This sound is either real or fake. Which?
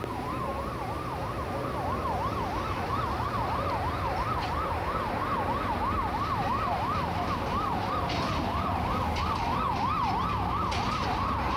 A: real